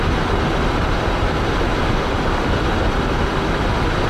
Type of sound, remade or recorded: recorded